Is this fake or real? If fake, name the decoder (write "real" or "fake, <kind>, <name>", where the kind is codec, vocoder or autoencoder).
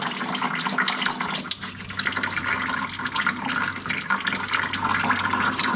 real